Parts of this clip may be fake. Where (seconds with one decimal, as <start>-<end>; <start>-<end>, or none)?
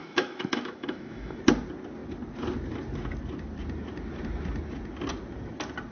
0.0-1.4